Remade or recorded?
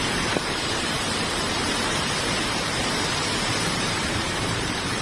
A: remade